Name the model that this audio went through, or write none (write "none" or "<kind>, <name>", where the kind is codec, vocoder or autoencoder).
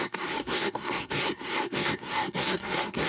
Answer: codec, SNAC